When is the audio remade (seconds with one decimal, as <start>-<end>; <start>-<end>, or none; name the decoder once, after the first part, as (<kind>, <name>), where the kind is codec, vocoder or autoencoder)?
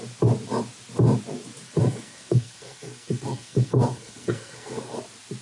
1.8-5.0 (codec, SNAC)